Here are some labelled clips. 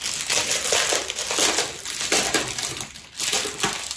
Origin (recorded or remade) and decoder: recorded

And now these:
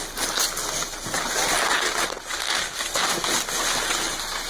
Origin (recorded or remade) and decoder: recorded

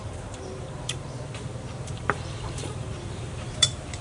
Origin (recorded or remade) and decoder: remade, vocoder, BigVGAN v2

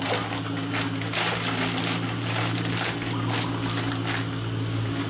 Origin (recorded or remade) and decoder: recorded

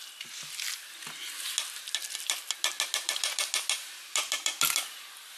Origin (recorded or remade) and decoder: recorded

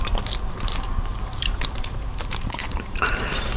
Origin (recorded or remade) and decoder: remade, vocoder, BigVGAN v2